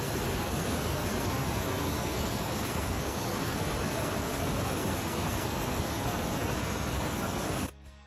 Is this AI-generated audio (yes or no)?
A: yes